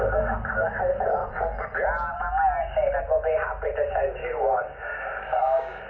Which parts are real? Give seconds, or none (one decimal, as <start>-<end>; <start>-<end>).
0.0-4.2